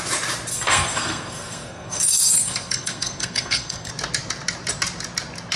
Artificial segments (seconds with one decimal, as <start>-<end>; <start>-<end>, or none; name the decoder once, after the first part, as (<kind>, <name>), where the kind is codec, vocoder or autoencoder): 0.5-3.9 (codec, SNAC)